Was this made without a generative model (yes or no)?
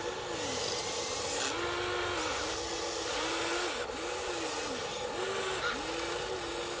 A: yes